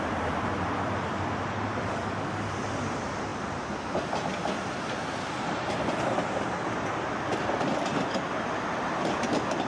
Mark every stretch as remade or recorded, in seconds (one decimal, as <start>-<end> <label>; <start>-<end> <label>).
0.0-3.3 remade; 3.3-4.1 recorded; 4.1-7.9 remade; 7.9-8.9 recorded; 8.9-9.7 remade